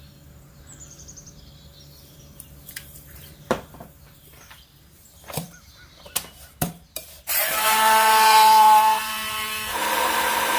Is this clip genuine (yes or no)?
no